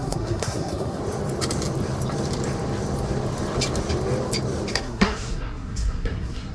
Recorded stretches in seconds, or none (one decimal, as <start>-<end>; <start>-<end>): 1.0-4.7